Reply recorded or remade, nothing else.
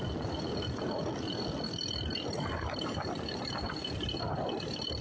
recorded